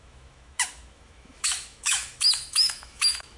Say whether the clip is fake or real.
fake